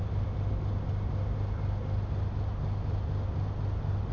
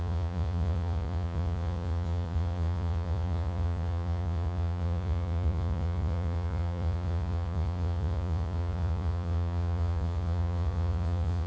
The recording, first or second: first